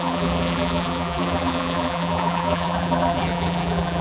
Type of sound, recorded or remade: remade